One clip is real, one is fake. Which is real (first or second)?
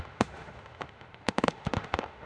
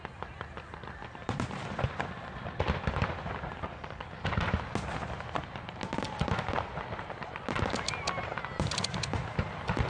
second